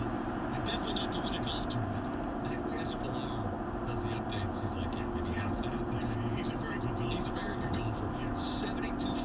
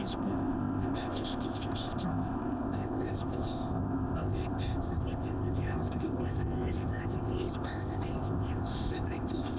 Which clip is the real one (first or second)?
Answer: first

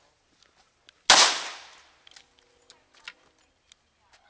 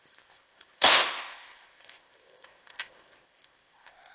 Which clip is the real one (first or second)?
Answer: first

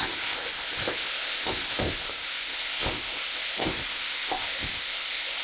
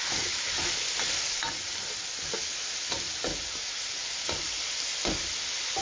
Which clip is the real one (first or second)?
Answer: second